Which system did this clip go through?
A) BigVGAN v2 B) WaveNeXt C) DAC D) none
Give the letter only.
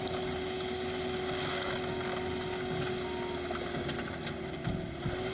D